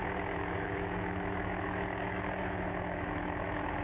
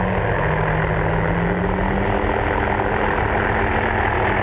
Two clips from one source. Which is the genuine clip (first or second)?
second